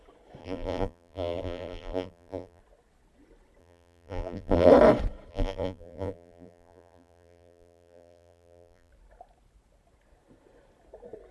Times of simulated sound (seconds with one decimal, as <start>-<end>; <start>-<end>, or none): 0.4-2.6; 3.6-4.7; 5.3-8.9